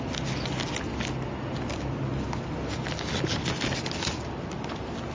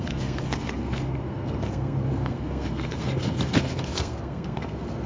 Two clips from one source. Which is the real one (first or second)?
first